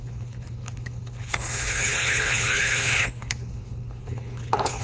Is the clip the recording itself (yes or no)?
no